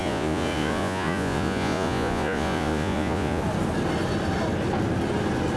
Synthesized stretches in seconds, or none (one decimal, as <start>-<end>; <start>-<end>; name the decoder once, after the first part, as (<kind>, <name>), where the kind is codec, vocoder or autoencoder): 0.0-3.4 (vocoder, Vocos)